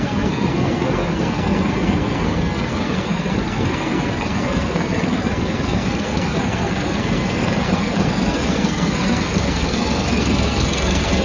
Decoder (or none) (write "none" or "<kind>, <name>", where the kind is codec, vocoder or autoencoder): codec, SNAC